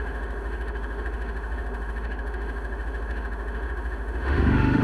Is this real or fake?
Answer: fake